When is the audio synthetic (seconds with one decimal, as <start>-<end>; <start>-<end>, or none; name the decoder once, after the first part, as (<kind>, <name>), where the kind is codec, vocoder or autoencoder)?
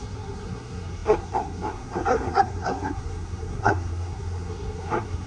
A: 0.0-5.3 (codec, SNAC)